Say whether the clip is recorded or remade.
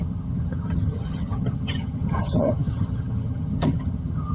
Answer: remade